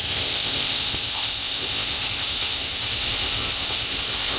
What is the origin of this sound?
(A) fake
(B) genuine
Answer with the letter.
A